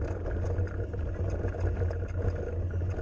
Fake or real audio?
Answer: real